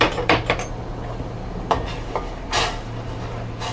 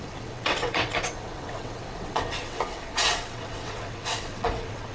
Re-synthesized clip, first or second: second